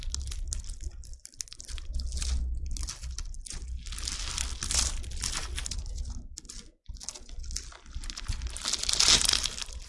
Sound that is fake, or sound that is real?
real